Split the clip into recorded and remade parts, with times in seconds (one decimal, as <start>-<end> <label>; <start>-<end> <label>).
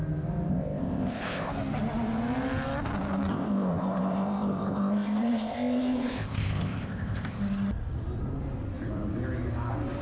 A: 0.0-0.5 recorded; 0.5-1.5 remade; 1.5-3.3 recorded; 3.3-7.4 remade; 7.4-10.0 recorded